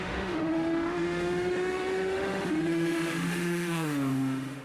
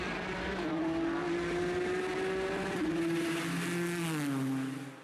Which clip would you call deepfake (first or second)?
first